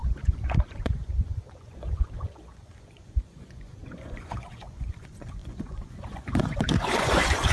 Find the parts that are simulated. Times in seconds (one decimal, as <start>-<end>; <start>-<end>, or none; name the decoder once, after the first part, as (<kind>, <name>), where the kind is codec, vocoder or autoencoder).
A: 0.0-7.5 (vocoder, Vocos)